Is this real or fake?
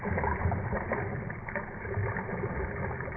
real